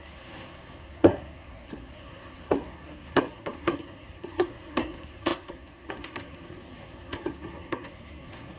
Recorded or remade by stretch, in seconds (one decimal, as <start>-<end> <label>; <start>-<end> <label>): 0.0-8.6 remade